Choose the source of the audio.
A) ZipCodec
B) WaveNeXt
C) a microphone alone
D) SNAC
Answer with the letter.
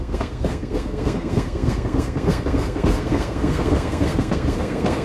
D